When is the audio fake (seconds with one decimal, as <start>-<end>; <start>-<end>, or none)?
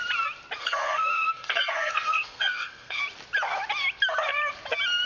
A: 0.6-3.0